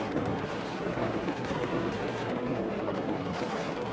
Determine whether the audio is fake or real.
fake